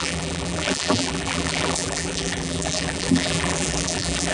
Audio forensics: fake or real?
fake